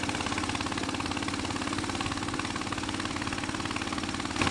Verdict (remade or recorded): recorded